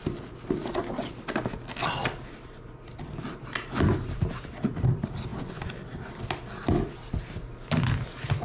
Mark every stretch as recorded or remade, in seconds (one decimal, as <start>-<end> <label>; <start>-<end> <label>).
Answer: 0.0-8.4 recorded